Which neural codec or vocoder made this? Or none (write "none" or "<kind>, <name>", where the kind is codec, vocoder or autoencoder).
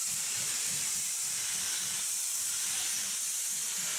vocoder, BigVGAN v2